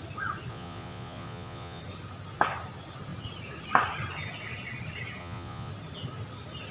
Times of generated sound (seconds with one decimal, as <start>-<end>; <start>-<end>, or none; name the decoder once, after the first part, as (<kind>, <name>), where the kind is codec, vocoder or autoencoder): 0.5-1.8 (vocoder, Vocos); 5.2-5.7